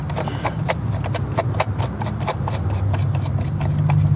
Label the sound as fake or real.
real